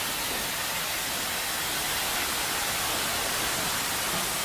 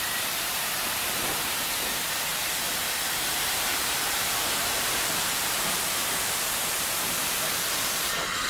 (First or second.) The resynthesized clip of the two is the second